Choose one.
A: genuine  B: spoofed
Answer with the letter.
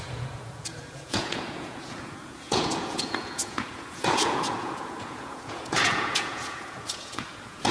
B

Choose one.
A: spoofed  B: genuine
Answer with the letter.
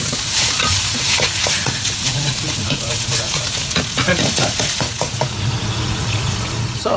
A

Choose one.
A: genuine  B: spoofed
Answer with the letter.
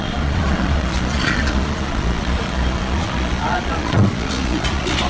B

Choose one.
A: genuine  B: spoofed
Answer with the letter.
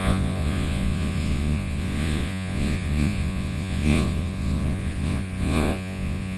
B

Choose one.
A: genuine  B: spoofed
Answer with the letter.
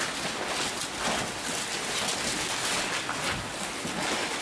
A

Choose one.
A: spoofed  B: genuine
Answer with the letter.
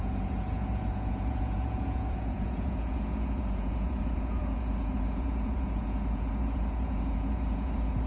A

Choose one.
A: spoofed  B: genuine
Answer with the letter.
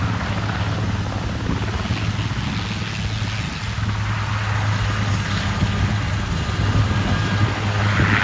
B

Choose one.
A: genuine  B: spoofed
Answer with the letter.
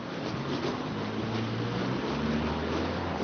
A